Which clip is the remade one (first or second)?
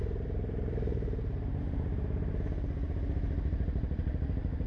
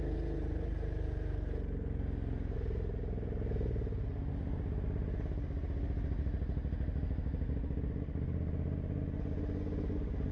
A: first